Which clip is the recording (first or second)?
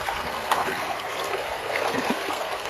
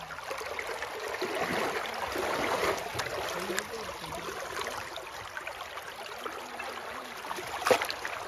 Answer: second